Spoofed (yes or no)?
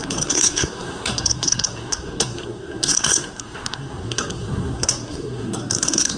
yes